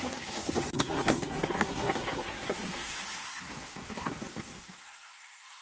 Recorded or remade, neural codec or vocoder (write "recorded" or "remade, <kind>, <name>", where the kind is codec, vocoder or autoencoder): remade, codec, SNAC